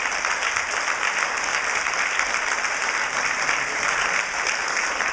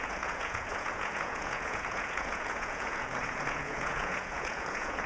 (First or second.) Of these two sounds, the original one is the first